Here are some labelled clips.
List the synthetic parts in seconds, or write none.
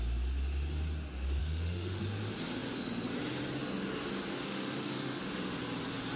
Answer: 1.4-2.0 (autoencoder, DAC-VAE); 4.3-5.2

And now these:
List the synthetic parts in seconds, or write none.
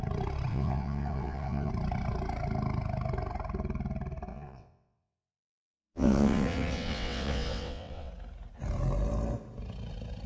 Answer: 0.5-1.7 (vocoder, WaveNeXt); 4.3-8.1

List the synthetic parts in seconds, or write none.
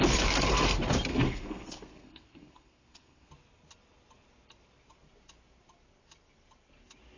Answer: 1.1-3.3 (codec, SNAC)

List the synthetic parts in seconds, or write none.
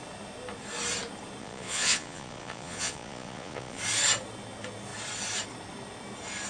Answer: 1.4-3.8 (vocoder, Vocos)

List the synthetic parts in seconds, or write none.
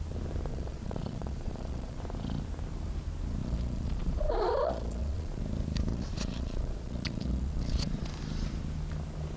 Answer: 0.5-2.0 (vocoder, Vocos); 3.4-5.4; 5.9-8.1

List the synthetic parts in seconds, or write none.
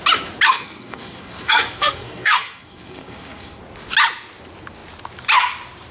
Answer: 0.5-3.6 (codec, SNAC)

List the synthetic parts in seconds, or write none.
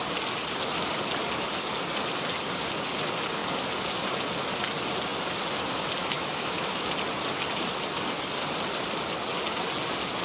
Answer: 6.0-6.9 (autoencoder, DAC-VAE)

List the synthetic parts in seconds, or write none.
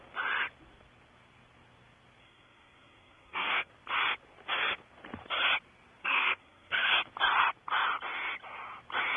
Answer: 2.2-3.7 (codec, SNAC); 6.0-6.9